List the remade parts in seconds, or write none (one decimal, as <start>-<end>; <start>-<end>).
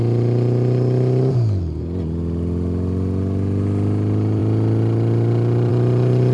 none